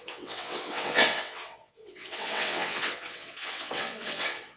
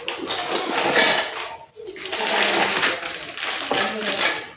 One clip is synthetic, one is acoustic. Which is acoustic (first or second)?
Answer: second